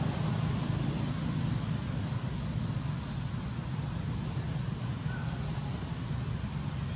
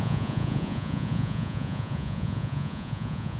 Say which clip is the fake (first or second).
second